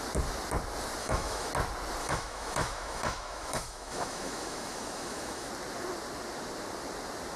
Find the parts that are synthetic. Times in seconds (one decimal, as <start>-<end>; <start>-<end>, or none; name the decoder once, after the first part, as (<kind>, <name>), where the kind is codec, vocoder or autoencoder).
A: 1.0-1.5 (autoencoder, DAC-VAE); 2.0-5.5